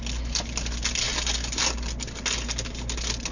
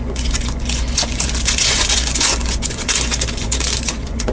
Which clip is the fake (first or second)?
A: second